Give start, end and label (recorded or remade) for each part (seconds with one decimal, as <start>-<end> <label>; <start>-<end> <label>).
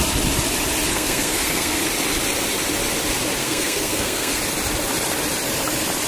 0.0-0.9 recorded; 0.9-1.8 remade; 1.8-3.4 recorded; 3.4-4.4 remade; 4.4-6.1 recorded